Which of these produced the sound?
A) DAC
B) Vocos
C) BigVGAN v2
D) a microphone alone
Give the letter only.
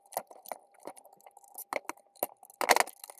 D